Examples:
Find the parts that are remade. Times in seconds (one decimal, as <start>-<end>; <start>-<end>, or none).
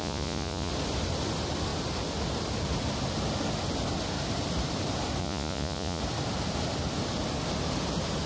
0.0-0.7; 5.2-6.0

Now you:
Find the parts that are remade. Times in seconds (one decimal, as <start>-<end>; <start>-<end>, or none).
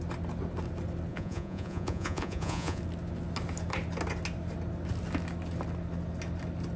1.1-2.8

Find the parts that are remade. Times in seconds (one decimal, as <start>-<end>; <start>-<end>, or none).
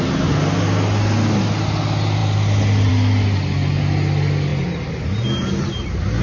none